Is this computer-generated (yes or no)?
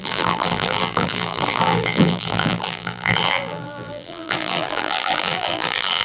yes